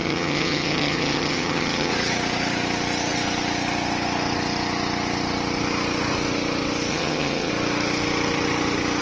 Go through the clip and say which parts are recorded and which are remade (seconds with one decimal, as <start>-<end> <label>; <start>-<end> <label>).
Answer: 0.0-1.9 remade; 1.9-6.9 recorded; 6.9-7.5 remade; 7.5-9.0 recorded